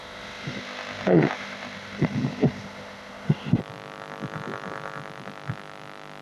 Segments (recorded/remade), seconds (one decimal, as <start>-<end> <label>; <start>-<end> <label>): 0.0-3.6 remade; 3.6-6.2 recorded